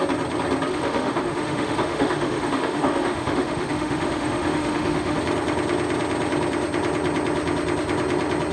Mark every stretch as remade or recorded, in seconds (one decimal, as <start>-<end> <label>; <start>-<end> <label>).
0.0-0.7 recorded; 0.7-5.2 remade; 5.2-8.5 recorded